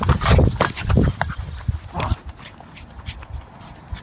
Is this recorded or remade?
recorded